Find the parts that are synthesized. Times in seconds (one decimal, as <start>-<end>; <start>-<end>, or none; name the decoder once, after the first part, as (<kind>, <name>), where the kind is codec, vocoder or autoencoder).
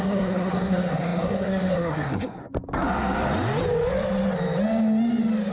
0.0-2.4 (codec, SNAC)